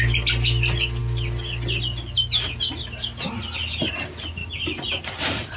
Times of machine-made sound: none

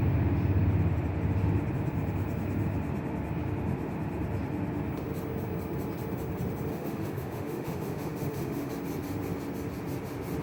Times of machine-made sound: 6.7-8.7 (autoencoder, DAC-VAE)

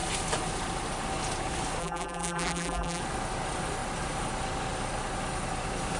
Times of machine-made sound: 1.8-3.0 (vocoder, BigVGAN v2)

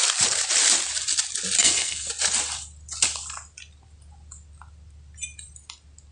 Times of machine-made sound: 1.6-2.1 (codec, SNAC)

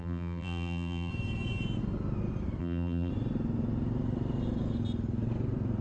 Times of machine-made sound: 0.0-1.1 (vocoder, BigVGAN v2); 2.6-3.1

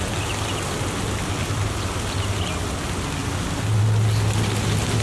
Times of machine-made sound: 1.4-2.0 (vocoder, BigVGAN v2)

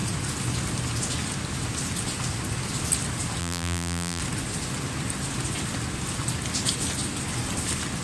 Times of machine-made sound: 3.4-4.2 (vocoder, BigVGAN v2)